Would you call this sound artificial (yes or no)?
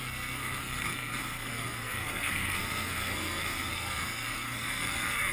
yes